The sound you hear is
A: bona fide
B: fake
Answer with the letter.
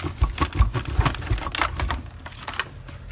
A